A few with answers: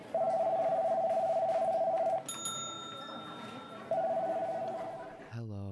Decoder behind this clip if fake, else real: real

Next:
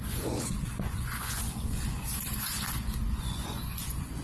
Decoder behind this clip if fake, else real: fake, vocoder, Vocos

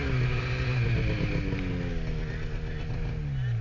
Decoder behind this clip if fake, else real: real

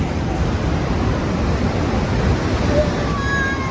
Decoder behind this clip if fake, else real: real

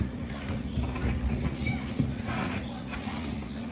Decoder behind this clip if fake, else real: fake, vocoder, Vocos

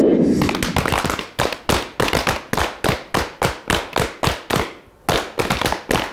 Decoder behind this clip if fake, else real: real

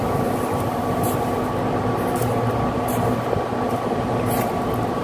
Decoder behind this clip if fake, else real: real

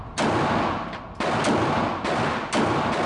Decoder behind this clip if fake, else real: real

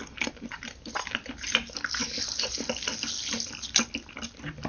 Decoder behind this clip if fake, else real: real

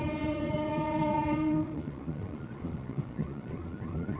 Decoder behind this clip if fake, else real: fake, vocoder, Vocos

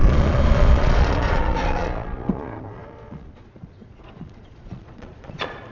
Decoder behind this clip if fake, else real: fake, vocoder, Vocos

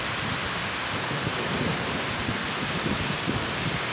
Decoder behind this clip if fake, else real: real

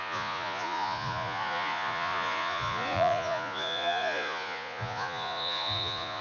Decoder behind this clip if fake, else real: fake, vocoder, Vocos